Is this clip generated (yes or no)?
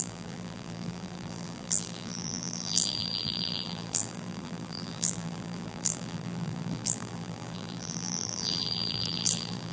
yes